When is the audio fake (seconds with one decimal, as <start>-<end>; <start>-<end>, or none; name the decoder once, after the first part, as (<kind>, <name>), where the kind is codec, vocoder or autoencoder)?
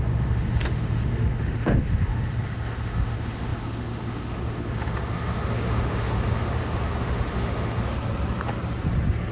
0.0-7.9 (autoencoder, DAC-VAE)